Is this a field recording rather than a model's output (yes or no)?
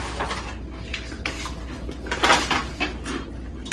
yes